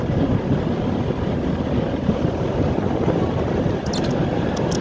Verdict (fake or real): real